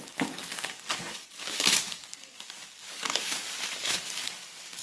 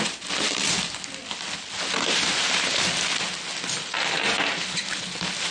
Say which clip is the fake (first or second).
first